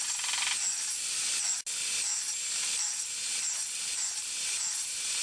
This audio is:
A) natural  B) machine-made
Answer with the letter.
A